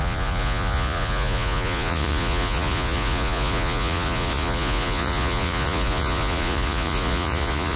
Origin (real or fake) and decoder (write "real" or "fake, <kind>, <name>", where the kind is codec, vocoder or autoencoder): fake, vocoder, Vocos